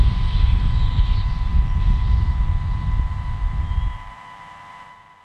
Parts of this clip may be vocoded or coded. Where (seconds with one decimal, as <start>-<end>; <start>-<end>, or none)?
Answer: 0.0-5.2